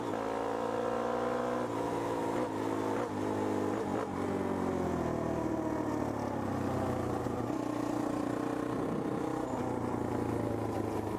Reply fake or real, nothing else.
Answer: real